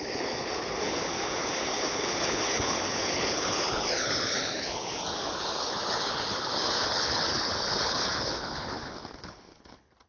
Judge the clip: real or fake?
fake